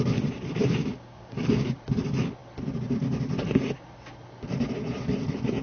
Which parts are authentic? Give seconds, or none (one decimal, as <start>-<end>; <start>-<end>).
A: 0.0-0.8; 1.8-5.6